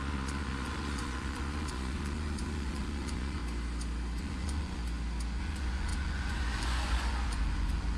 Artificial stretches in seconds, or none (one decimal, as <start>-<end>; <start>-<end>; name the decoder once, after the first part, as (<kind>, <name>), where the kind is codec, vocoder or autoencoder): 0.0-3.4 (vocoder, Vocos); 4.2-4.8; 5.4-8.0